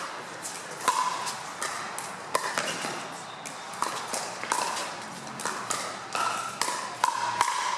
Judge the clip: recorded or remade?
recorded